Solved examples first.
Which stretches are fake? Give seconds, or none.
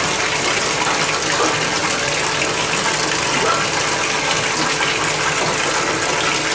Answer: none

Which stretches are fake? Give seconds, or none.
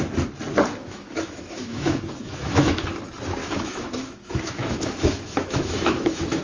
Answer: 0.8-2.8 (autoencoder, DAC-VAE); 3.4-6.4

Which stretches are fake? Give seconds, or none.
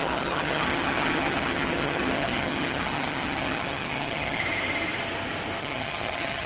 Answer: 0.0-4.4 (vocoder, HiFi-GAN); 5.6-6.5